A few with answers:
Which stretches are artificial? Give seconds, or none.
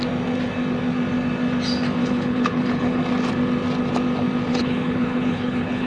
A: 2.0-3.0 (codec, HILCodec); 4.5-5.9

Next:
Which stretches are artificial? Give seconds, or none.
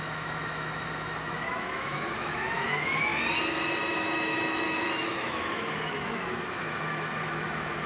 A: 0.0-3.1 (autoencoder, DAC-VAE); 3.8-7.9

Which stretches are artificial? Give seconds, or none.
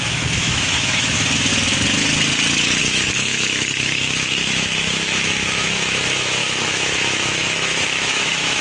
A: 0.0-1.5 (autoencoder, DAC-VAE); 2.8-8.6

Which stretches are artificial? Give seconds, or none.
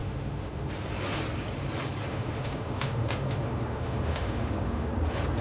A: 0.0-0.7 (autoencoder, DAC-VAE); 2.1-4.9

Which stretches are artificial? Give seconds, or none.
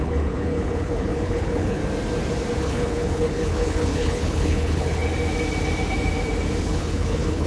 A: 0.0-1.8 (codec, HILCodec); 2.6-5.0; 6.6-7.5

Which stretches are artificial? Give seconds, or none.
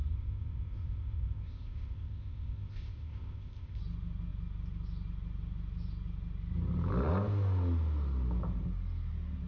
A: 0.0-3.8 (codec, ZipCodec)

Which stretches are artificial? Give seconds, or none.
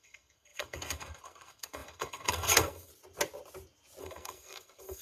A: 0.0-2.9 (codec, SNAC); 4.0-5.0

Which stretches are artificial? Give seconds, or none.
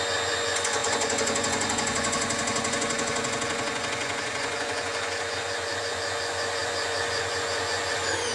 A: 0.0-8.3 (vocoder, Vocos)